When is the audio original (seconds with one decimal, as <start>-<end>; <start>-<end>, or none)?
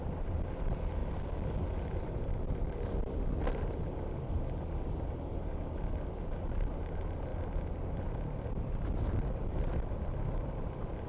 0.0-11.1